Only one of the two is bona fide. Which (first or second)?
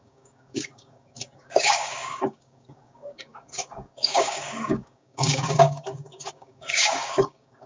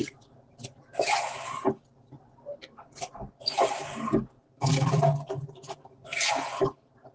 second